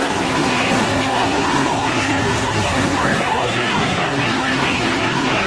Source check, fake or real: fake